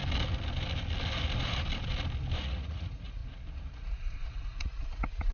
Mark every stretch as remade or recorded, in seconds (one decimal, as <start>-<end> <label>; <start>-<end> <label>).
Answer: 0.0-2.4 recorded; 2.4-3.2 remade; 3.2-3.8 recorded; 3.8-5.3 remade